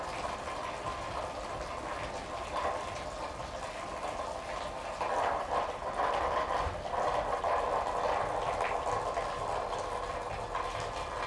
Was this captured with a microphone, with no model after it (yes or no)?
yes